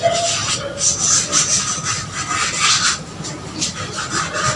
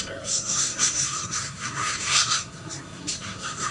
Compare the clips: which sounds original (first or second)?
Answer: first